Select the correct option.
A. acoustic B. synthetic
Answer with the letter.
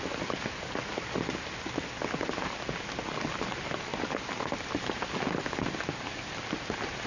A